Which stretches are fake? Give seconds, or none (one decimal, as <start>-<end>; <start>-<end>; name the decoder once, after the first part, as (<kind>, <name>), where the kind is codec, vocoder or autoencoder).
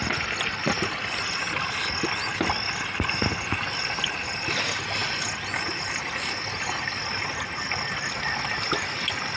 none